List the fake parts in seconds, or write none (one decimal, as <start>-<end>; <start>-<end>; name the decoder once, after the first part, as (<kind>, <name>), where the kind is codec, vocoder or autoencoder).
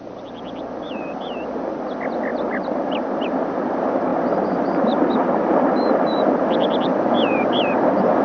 none